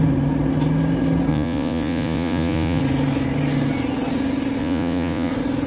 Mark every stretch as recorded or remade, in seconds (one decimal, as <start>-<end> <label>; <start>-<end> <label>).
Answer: 0.0-1.3 recorded; 1.3-2.8 remade; 2.8-4.6 recorded; 4.6-5.3 remade; 5.3-5.7 recorded